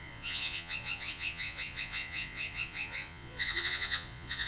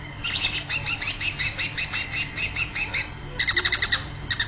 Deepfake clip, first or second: first